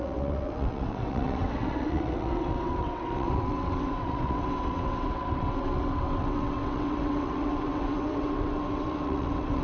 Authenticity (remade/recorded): remade